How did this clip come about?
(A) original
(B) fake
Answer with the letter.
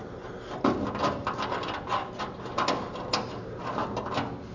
A